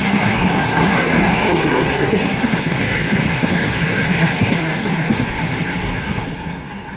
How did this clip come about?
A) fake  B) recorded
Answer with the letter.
A